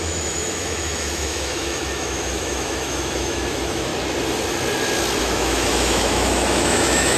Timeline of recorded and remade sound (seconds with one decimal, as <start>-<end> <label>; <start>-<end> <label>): 0.0-3.9 remade; 3.9-5.2 recorded; 5.2-7.2 remade